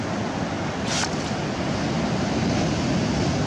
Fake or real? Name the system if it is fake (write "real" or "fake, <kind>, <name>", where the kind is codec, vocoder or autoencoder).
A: real